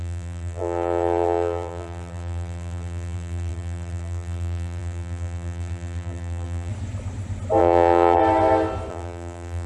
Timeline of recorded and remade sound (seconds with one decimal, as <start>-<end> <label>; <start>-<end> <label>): 0.0-6.7 remade; 6.7-7.6 recorded; 7.6-8.2 remade; 8.2-8.9 recorded; 8.9-9.7 remade